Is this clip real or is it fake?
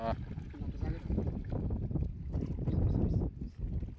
real